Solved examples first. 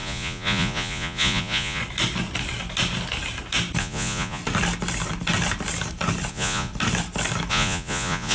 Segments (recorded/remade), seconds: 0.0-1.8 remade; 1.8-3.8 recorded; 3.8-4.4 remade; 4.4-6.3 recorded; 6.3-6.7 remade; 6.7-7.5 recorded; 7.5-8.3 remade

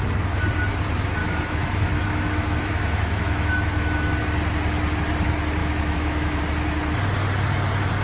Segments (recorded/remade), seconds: 0.0-1.2 recorded; 1.2-4.2 remade; 4.2-5.6 recorded; 5.6-6.4 remade; 6.4-8.0 recorded

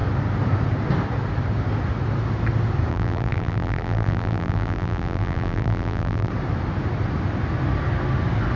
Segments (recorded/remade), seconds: 0.0-2.9 recorded; 2.9-6.3 remade; 6.3-8.6 recorded

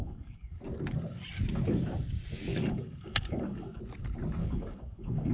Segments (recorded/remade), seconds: 0.0-0.6 remade; 0.6-2.5 recorded; 2.5-3.8 remade; 3.8-4.4 recorded; 4.4-5.3 remade